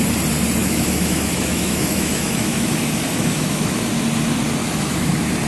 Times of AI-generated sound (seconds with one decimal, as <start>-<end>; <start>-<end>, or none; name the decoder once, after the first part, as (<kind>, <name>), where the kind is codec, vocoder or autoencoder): 0.6-3.9 (autoencoder, DAC-VAE); 4.6-5.1